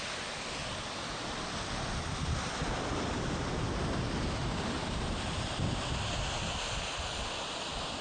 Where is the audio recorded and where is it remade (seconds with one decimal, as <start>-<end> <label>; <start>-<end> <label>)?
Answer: 0.0-4.4 recorded; 4.4-5.6 remade; 5.6-8.0 recorded